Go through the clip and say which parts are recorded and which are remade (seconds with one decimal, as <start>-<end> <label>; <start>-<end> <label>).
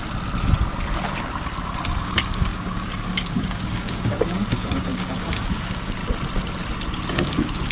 0.0-2.0 recorded; 2.0-6.0 remade; 6.0-7.1 recorded; 7.1-7.7 remade